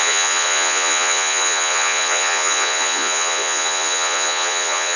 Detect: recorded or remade remade